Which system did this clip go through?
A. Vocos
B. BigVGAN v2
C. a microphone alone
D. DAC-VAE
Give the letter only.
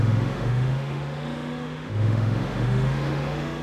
D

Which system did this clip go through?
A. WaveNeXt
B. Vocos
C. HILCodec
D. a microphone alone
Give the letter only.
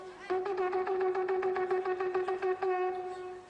D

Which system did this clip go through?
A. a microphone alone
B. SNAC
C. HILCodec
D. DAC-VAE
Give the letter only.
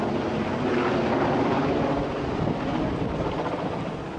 A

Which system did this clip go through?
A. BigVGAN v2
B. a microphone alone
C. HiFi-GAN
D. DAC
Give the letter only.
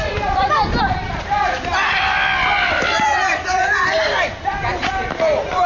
A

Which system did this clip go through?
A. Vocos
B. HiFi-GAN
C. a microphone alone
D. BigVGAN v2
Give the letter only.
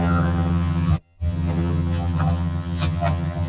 B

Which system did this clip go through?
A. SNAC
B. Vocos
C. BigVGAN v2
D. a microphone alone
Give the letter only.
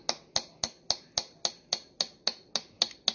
D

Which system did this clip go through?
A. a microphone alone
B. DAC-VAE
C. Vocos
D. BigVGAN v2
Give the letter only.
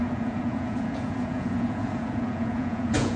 C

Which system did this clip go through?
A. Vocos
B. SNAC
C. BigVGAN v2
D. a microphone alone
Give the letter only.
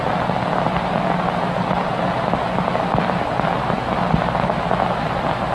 D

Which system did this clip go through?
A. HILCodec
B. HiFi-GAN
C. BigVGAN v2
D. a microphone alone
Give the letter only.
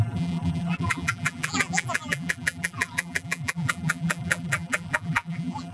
C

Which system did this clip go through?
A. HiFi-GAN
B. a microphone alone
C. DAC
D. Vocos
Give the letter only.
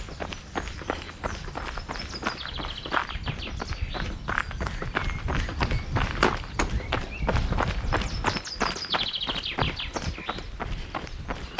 B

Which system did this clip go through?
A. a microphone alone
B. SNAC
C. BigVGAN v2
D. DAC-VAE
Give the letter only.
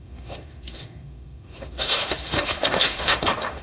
D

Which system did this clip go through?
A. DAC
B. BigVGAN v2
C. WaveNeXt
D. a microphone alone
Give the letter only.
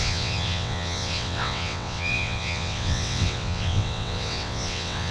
C